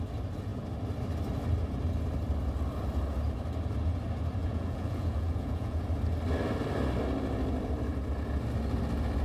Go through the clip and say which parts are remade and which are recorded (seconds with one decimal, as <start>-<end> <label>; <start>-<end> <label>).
0.0-4.4 recorded; 4.4-5.8 remade; 5.8-9.2 recorded